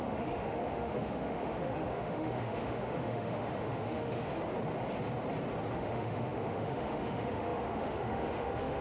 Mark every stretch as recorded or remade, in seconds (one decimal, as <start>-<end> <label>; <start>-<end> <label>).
0.0-4.3 remade; 4.3-5.7 recorded; 5.7-8.8 remade